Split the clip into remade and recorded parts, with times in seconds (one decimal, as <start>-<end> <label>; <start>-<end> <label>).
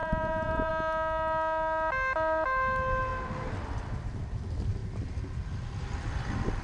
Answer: 0.0-0.7 remade; 0.7-4.8 recorded; 4.8-6.6 remade